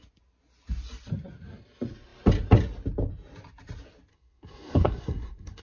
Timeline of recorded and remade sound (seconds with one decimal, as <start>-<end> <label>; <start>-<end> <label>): 0.0-4.1 recorded; 4.1-5.6 remade